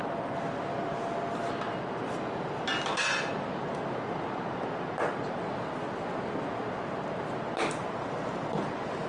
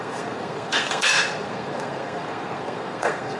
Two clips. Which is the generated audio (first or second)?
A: second